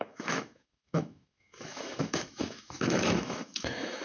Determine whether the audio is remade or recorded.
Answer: remade